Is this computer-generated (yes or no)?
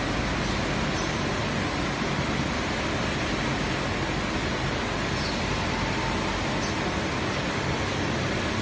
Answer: no